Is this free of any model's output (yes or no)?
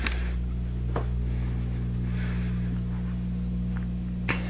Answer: yes